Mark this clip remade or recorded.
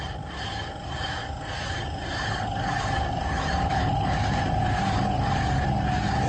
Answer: recorded